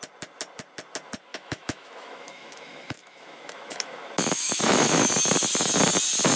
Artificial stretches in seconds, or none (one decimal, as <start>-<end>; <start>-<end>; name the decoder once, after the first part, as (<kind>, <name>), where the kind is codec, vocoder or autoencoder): 1.3-5.1 (autoencoder, DAC-VAE)

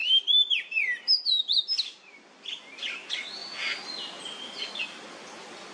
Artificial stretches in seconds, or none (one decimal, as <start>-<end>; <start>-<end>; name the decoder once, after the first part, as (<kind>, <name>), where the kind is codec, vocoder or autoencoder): none

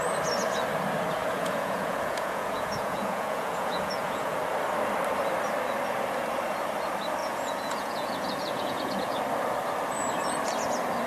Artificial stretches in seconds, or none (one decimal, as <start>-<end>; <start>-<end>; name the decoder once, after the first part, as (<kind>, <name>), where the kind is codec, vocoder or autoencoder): 1.2-4.4 (vocoder, Vocos); 7.2-9.1